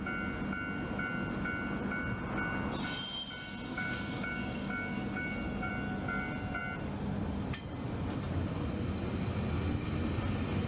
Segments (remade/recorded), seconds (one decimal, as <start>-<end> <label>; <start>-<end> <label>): 0.0-3.7 recorded; 3.7-5.7 remade; 5.7-10.7 recorded